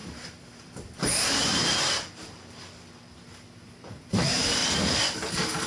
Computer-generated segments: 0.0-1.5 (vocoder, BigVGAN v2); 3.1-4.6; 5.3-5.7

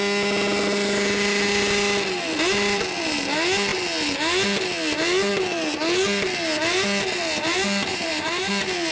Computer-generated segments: 7.9-8.5 (vocoder, BigVGAN v2)

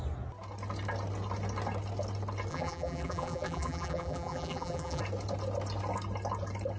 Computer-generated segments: 2.5-5.0 (vocoder, BigVGAN v2)

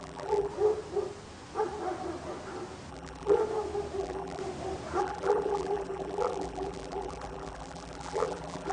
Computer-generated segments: 0.0-0.5 (vocoder, BigVGAN v2); 2.9-3.4; 4.0-4.4; 5.0-8.7